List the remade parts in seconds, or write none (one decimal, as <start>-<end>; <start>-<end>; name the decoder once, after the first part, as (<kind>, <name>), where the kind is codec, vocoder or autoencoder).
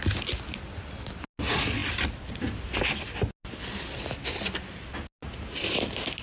none